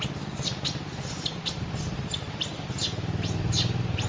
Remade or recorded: recorded